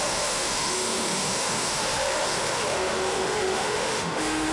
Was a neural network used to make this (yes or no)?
yes